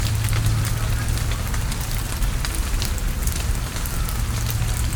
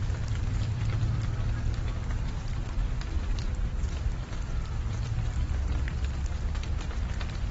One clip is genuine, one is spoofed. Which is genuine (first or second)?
first